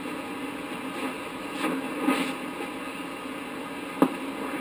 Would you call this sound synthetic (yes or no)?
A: no